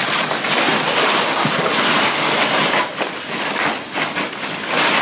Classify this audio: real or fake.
real